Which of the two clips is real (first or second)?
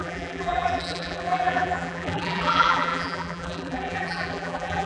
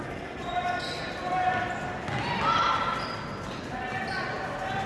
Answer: second